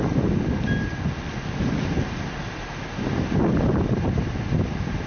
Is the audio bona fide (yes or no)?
yes